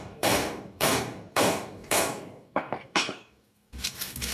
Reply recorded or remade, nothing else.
remade